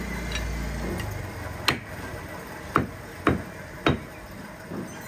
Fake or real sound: real